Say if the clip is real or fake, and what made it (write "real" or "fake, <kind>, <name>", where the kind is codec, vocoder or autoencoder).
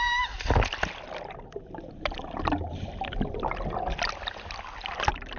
real